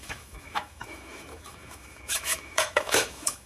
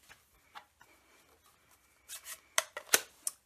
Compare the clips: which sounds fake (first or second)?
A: first